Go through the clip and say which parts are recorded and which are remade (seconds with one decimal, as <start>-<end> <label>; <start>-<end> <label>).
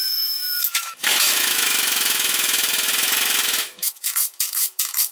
0.0-5.1 remade